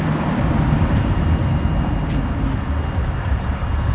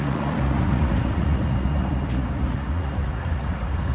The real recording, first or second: first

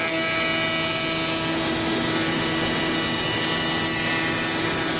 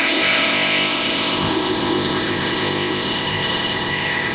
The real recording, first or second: first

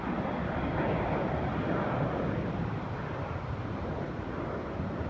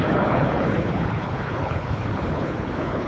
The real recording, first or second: first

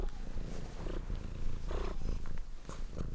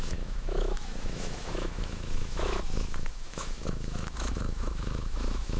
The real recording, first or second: first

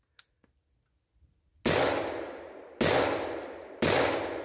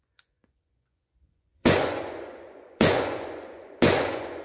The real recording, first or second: first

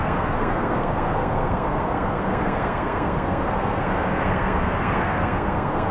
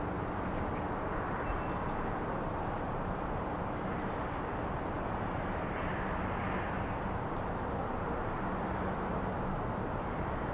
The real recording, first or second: second